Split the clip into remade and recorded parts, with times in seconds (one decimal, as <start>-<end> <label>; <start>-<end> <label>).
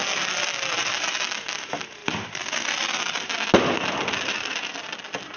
0.0-1.5 remade; 1.5-2.0 recorded; 2.0-5.4 remade